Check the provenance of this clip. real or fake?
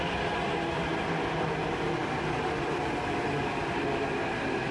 real